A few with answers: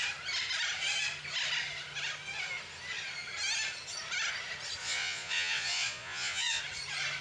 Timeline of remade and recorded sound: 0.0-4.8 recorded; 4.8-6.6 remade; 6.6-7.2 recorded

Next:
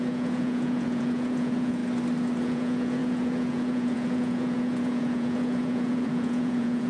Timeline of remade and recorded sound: 0.0-1.8 remade; 1.8-2.4 recorded; 2.4-6.9 remade

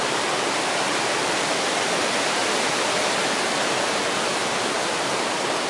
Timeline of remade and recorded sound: 0.0-2.4 remade; 2.4-3.3 recorded; 3.3-5.7 remade

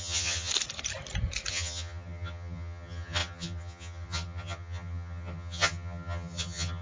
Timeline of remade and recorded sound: 0.0-0.5 remade; 0.5-1.5 recorded; 1.5-6.8 remade

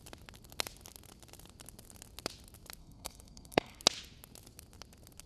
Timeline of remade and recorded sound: 0.0-2.8 recorded; 2.8-3.8 remade; 3.8-5.3 recorded

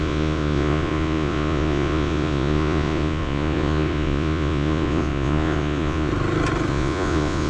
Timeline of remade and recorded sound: 0.0-6.1 remade; 6.1-6.7 recorded; 6.7-7.5 remade

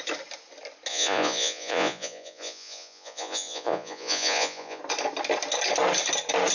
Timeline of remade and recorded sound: 0.0-0.9 recorded; 0.9-4.8 remade; 4.8-6.5 recorded